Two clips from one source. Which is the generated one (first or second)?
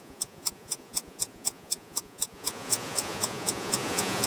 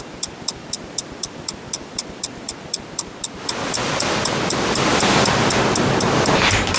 first